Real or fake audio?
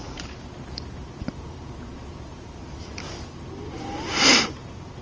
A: fake